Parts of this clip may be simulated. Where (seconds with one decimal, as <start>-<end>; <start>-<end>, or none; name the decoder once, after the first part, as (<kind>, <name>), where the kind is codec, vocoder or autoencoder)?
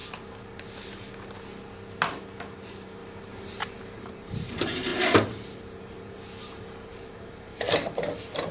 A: 2.4-3.0 (vocoder, BigVGAN v2); 3.6-8.5